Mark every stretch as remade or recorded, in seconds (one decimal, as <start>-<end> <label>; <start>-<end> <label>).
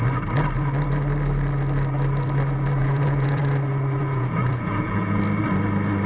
0.0-2.8 recorded; 2.8-3.4 remade; 3.4-4.0 recorded; 4.0-5.2 remade; 5.2-6.1 recorded